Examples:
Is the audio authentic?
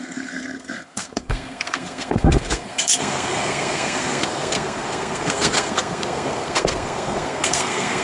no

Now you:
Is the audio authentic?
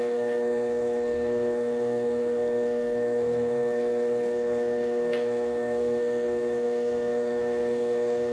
no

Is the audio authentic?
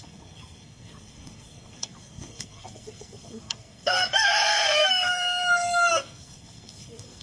no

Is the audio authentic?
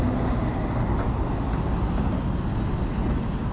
yes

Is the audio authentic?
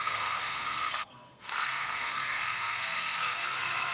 no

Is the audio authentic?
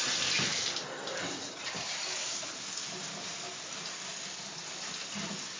yes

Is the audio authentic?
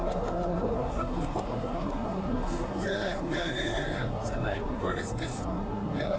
no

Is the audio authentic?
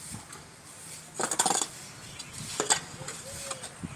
yes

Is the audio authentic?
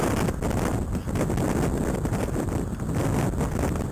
yes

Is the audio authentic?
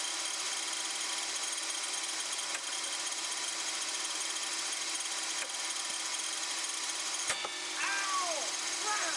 yes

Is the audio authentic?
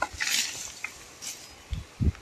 yes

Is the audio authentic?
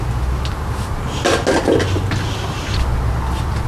yes